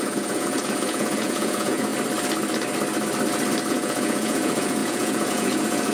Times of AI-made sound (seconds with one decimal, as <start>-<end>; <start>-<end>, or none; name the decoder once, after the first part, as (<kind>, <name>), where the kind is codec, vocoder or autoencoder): 0.0-1.9 (vocoder, Vocos); 3.7-5.9

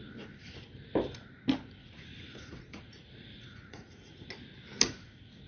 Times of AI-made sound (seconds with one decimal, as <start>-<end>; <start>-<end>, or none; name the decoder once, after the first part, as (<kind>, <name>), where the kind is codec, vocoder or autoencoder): 1.8-4.3 (vocoder, Vocos)

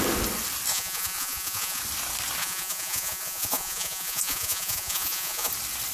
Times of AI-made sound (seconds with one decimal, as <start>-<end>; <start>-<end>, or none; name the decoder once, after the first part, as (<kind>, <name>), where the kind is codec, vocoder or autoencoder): 0.7-1.8 (vocoder, Vocos); 2.4-5.5

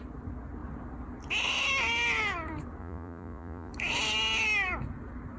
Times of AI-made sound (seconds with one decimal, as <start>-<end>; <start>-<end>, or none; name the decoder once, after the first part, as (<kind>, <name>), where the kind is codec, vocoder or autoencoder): 2.8-3.7 (vocoder, Vocos)

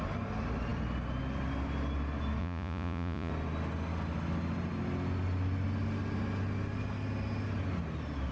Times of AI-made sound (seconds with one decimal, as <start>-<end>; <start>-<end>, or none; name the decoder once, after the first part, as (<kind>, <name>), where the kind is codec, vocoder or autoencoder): 2.4-3.3 (vocoder, Vocos)

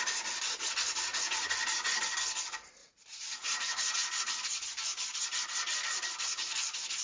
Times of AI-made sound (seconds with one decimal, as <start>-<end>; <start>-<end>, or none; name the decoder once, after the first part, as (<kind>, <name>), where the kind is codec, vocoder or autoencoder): 2.8-4.2 (vocoder, Vocos)